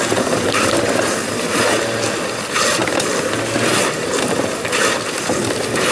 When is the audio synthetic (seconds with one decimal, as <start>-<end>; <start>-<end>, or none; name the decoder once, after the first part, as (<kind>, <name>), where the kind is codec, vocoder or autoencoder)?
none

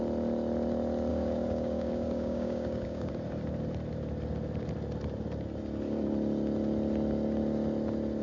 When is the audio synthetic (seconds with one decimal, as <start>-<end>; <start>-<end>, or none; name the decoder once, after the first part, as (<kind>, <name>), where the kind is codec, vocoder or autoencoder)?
1.1-3.1 (codec, DAC)

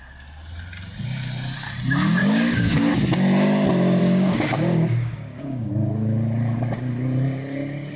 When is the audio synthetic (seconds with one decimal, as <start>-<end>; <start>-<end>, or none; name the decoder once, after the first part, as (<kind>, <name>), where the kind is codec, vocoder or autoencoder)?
2.2-2.9 (codec, DAC); 4.0-5.7

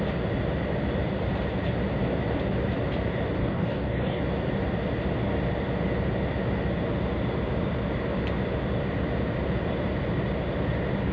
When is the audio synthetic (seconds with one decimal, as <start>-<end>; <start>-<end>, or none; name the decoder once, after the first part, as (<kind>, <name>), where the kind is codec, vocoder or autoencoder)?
3.4-4.2 (codec, DAC)

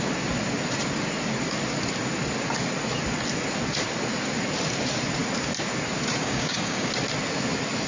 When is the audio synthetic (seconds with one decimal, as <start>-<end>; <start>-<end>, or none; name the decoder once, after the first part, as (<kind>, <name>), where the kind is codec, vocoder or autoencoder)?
6.2-6.9 (codec, DAC)

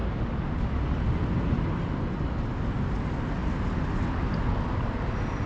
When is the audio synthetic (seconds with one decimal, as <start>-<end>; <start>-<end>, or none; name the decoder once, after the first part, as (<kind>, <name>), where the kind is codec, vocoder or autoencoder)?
none

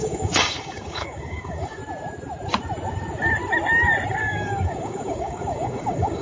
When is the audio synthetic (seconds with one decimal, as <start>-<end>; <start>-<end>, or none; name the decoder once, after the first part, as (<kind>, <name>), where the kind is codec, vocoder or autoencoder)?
0.0-1.8 (codec, DAC); 4.2-6.2